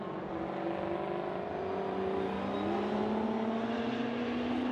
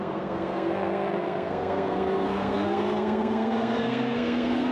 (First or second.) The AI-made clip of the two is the second